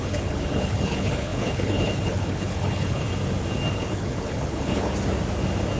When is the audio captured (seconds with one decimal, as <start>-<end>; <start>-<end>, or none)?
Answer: 3.1-3.7; 4.9-5.8